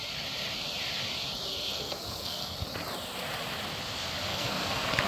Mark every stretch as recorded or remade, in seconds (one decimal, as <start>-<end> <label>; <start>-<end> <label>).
0.0-1.5 recorded; 1.5-2.7 remade; 2.7-4.3 recorded; 4.3-5.1 remade